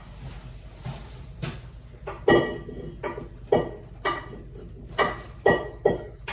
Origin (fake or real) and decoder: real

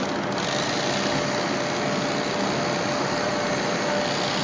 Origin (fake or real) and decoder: real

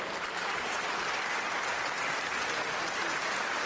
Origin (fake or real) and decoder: real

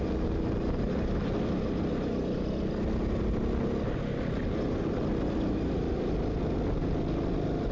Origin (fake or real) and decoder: real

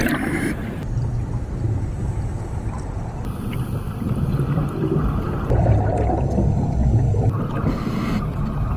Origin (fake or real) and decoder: real